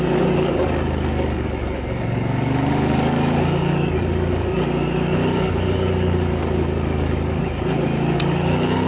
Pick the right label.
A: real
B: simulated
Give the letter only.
B